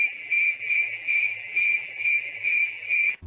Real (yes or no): no